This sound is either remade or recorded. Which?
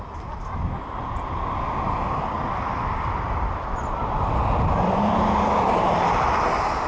recorded